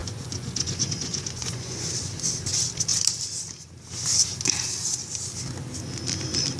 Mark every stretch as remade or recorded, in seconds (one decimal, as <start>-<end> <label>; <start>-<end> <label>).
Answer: 0.0-1.9 remade; 1.9-6.6 recorded